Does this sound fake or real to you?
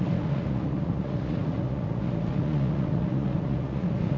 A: fake